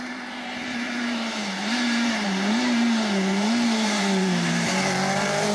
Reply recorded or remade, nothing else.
remade